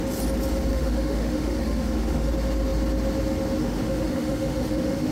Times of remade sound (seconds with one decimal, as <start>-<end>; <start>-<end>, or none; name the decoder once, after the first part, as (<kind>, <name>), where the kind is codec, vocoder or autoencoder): 0.7-2.3 (autoencoder, DAC-VAE); 3.6-5.1

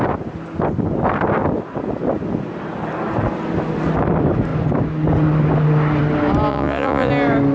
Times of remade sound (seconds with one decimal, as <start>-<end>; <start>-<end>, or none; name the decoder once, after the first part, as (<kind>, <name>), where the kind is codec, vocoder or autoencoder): 6.5-7.1 (vocoder, Vocos)

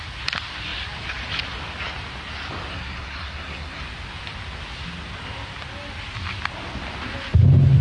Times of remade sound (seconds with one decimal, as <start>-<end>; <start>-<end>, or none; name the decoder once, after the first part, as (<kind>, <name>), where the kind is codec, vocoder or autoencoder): 2.7-3.8 (codec, SNAC)